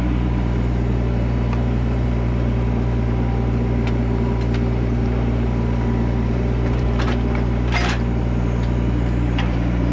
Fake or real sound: fake